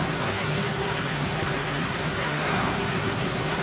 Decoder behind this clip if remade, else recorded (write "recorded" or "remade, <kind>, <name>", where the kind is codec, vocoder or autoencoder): remade, codec, SNAC